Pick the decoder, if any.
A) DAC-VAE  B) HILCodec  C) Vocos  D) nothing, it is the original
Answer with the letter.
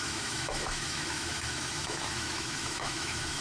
A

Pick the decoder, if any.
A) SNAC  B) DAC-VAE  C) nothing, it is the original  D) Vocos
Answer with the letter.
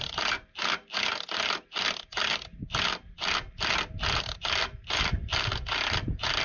C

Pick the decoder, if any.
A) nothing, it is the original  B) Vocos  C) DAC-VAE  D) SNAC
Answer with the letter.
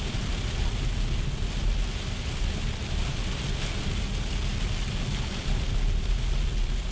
A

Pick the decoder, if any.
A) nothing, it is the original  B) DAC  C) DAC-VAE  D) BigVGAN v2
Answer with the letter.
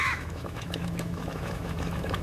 C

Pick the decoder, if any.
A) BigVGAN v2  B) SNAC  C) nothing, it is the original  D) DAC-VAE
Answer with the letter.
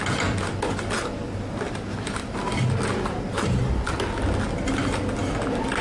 C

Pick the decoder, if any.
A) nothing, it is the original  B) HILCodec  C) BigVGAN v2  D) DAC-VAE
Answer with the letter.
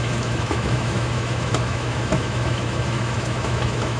D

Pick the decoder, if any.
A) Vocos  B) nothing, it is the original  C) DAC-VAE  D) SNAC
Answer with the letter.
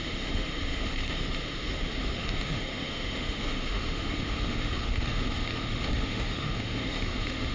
C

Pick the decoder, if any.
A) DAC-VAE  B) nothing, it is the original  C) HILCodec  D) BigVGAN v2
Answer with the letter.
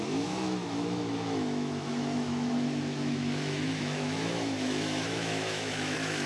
A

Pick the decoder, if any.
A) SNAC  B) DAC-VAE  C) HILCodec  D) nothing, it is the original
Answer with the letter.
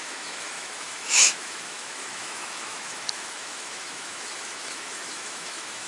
B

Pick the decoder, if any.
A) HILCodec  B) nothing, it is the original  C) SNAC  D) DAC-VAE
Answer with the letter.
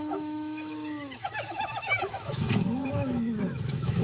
D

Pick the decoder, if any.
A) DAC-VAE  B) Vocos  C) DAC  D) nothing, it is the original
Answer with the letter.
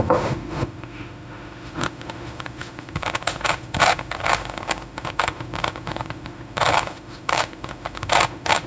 A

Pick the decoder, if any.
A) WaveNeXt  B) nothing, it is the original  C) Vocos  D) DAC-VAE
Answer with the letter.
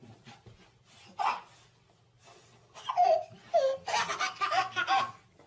B